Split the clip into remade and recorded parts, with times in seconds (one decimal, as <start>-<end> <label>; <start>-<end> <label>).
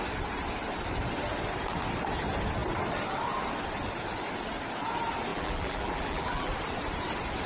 0.0-5.3 recorded; 5.3-6.5 remade; 6.5-7.5 recorded